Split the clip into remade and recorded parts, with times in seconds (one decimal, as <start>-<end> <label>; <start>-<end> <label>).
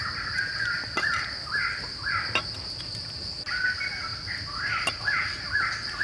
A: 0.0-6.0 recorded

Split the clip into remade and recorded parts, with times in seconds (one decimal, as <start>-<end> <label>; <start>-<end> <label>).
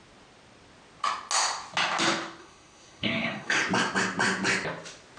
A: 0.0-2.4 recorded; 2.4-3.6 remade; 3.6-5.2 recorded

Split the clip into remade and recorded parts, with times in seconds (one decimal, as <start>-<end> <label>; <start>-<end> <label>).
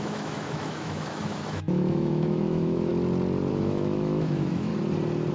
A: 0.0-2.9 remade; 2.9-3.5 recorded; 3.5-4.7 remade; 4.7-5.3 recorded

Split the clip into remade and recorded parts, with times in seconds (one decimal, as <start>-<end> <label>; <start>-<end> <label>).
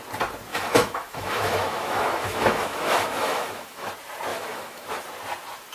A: 0.0-0.5 recorded; 0.5-3.9 remade; 3.9-4.3 recorded; 4.3-4.9 remade; 4.9-5.7 recorded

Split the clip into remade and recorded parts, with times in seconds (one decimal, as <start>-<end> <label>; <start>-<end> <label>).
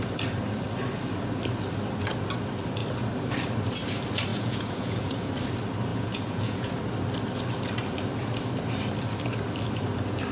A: 0.0-4.3 recorded; 4.3-5.3 remade; 5.3-5.9 recorded; 5.9-6.7 remade; 6.7-10.3 recorded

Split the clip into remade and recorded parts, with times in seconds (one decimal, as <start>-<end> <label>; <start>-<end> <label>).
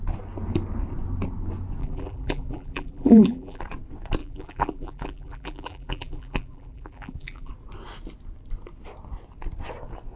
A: 0.0-1.8 recorded; 1.8-3.6 remade; 3.6-4.2 recorded; 4.2-7.5 remade; 7.5-10.2 recorded